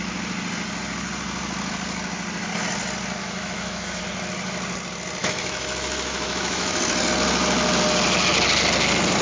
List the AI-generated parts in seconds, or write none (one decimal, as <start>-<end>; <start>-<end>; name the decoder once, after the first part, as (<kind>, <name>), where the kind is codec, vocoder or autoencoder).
3.2-4.0 (autoencoder, DAC-VAE); 5.2-6.8